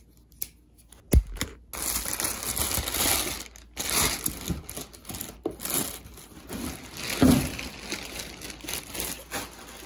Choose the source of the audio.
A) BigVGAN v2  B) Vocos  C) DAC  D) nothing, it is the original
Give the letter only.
D